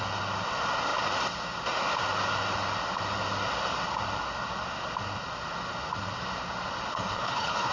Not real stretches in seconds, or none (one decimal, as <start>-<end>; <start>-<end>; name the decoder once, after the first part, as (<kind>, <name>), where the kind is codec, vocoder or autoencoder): 6.9-7.7 (codec, HILCodec)